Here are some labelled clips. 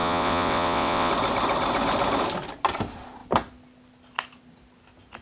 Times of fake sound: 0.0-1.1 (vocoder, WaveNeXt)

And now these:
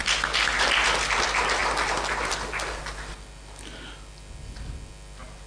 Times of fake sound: none

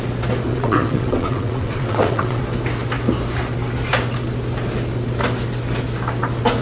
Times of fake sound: 0.5-2.4 (vocoder, WaveNeXt)

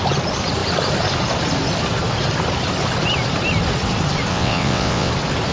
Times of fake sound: 4.3-5.1 (vocoder, WaveNeXt)

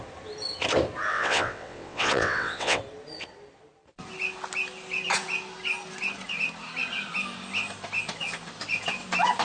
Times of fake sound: 1.1-2.8 (vocoder, WaveNeXt)

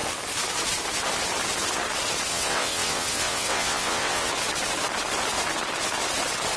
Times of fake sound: 2.3-4.3 (vocoder, WaveNeXt)